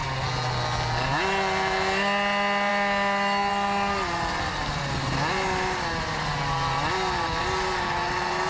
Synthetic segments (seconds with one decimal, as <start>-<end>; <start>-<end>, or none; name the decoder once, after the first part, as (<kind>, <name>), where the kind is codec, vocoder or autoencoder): none